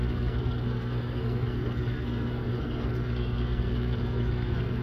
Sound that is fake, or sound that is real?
fake